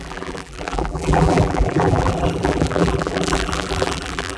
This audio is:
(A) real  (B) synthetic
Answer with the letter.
B